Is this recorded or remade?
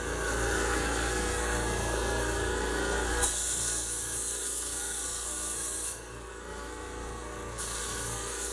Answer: remade